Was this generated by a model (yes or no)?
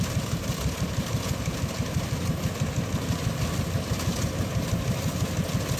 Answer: no